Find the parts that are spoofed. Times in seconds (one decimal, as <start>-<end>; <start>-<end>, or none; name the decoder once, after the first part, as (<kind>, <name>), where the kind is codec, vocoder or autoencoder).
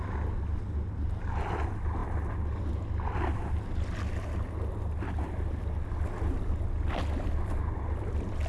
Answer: none